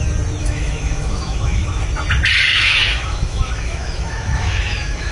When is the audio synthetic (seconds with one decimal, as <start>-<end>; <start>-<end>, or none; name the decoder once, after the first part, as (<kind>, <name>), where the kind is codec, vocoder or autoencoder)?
0.4-1.8 (autoencoder, DAC-VAE); 2.5-5.1